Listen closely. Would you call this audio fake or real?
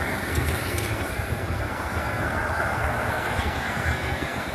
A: fake